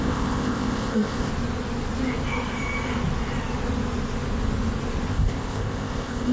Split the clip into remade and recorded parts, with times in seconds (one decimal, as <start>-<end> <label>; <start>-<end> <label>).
0.0-1.3 remade; 1.3-5.1 recorded; 5.1-6.3 remade